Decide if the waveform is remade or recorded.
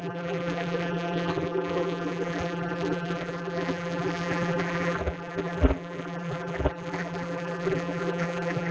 remade